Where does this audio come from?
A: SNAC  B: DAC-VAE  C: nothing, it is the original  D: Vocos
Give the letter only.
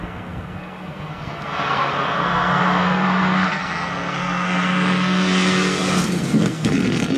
A